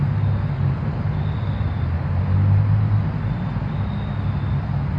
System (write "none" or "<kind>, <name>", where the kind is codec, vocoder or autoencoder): none